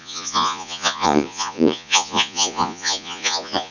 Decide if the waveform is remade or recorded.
remade